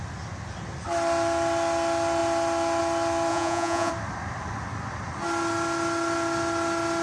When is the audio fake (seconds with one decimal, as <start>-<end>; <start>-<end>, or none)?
3.3-3.9